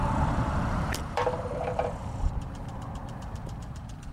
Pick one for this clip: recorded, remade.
remade